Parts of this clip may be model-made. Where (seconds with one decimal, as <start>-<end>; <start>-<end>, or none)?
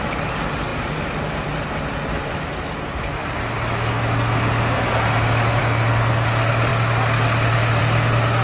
none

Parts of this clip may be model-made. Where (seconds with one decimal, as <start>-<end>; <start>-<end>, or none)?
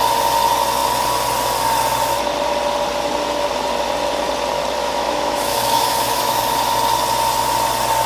4.8-6.4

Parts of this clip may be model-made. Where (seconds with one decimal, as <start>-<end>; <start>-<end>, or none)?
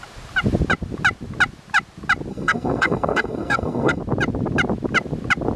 2.3-4.0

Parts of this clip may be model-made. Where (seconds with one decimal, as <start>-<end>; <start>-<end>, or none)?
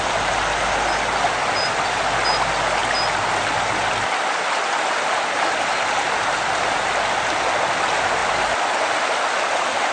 none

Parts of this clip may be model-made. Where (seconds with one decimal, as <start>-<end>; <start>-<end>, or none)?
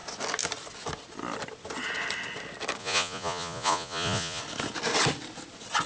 2.8-4.4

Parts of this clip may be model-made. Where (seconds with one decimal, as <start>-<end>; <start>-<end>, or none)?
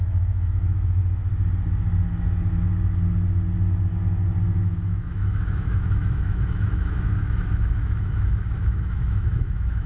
0.0-1.0; 4.6-9.9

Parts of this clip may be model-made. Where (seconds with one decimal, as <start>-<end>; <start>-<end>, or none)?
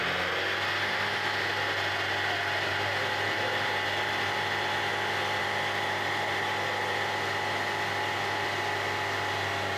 none